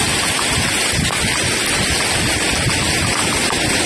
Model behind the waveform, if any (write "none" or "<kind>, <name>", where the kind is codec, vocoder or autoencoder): none